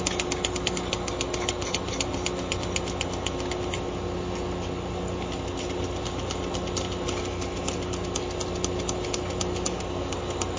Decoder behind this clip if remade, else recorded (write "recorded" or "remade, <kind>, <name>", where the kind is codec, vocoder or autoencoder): recorded